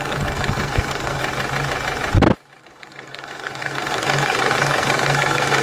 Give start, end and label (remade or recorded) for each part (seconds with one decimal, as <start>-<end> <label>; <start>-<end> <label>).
0.0-1.2 remade; 1.2-2.6 recorded; 2.6-5.6 remade